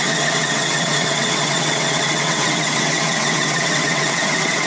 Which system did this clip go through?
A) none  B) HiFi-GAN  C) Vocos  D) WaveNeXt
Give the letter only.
D